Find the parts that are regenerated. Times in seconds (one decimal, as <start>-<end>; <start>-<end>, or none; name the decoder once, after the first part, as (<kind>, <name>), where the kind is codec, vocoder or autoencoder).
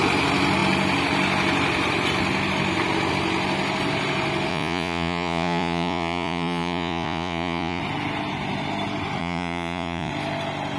4.5-7.8 (vocoder, Vocos); 9.2-10.1